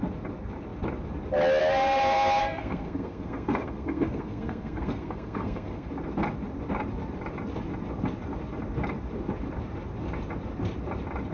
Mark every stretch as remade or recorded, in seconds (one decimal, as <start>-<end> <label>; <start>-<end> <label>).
0.0-2.4 recorded; 2.4-5.9 remade; 5.9-11.3 recorded